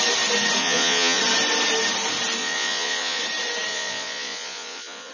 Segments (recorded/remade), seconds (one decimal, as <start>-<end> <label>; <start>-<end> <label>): 0.0-0.6 recorded; 0.6-1.2 remade; 1.2-2.4 recorded; 2.4-3.2 remade; 3.2-3.7 recorded; 3.7-5.1 remade